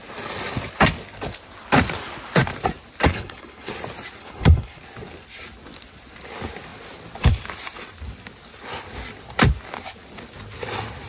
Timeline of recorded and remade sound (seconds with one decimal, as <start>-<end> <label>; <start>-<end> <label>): 0.0-3.1 recorded; 3.1-3.7 remade; 3.7-4.2 recorded; 4.2-4.8 remade; 4.8-11.1 recorded